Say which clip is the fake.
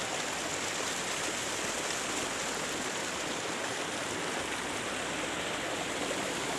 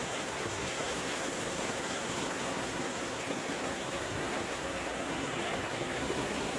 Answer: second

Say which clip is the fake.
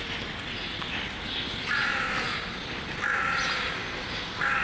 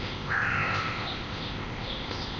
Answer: second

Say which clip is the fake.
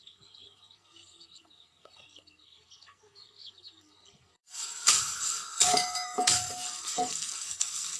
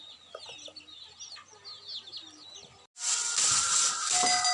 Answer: first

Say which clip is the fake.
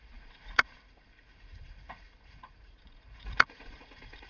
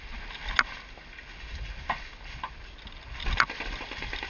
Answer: first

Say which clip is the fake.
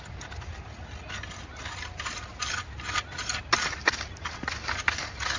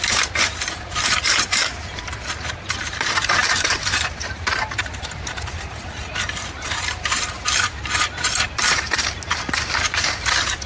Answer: second